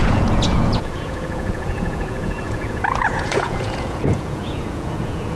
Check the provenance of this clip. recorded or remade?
remade